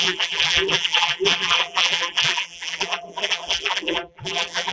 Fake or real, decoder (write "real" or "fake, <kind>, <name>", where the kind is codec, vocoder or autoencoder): fake, vocoder, BigVGAN v2